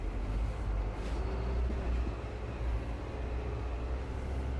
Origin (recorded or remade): recorded